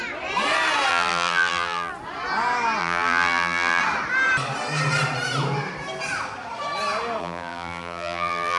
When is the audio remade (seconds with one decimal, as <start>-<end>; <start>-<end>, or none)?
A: 0.9-1.9; 2.8-3.8; 7.2-8.6